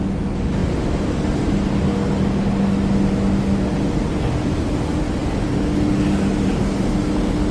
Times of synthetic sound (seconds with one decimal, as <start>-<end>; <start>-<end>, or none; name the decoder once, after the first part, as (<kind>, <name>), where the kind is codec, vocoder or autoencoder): none